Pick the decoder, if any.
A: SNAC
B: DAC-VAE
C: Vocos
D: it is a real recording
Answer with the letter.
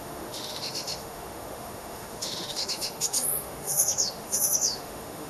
B